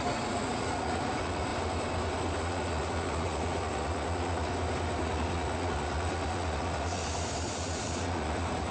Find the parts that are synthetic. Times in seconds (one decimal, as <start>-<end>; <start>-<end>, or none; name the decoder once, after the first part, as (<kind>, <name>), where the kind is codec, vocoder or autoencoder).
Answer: 0.0-1.5 (vocoder, Vocos); 2.4-4.5; 5.0-7.0; 7.5-8.7